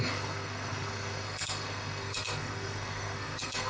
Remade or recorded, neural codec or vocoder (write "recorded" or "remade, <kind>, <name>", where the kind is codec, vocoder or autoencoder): remade, codec, SNAC